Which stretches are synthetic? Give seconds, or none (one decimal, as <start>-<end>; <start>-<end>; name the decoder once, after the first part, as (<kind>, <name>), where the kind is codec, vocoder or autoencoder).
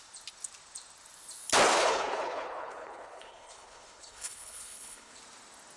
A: 1.8-5.2 (codec, HILCodec)